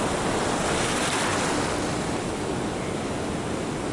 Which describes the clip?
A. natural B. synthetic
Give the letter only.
A